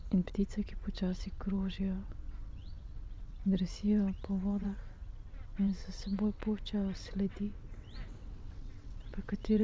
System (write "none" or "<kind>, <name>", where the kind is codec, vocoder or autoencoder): vocoder, WaveNeXt